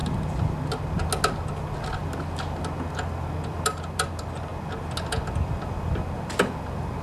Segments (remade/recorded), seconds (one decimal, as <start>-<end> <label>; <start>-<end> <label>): 0.0-7.0 recorded